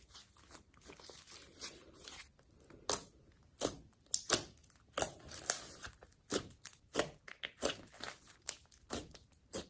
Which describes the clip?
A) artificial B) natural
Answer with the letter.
B